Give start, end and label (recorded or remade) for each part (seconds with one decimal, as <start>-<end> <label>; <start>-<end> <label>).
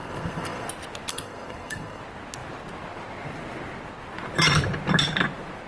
0.0-0.7 remade; 0.7-1.1 recorded; 1.1-2.0 remade; 2.0-5.7 recorded